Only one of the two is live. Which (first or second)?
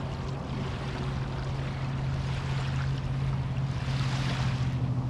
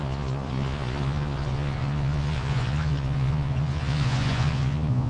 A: first